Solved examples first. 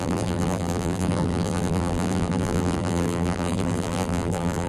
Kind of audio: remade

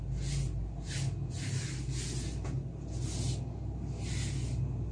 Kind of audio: recorded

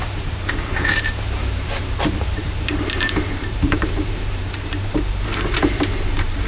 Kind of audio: remade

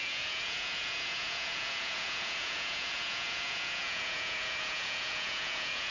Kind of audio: remade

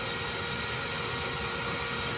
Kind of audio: recorded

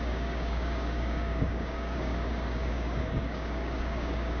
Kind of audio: remade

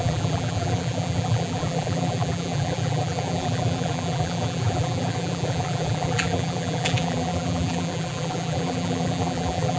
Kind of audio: remade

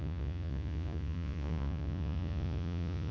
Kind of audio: remade